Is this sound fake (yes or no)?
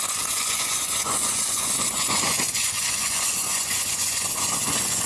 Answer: yes